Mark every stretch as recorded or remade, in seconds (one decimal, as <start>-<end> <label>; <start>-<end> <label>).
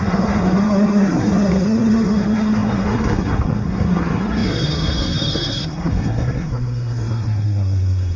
0.0-8.2 remade